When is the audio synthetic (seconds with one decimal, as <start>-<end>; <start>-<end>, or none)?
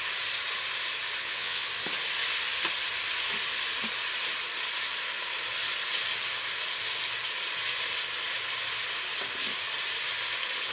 1.2-1.7